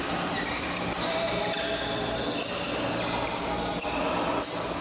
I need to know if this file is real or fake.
real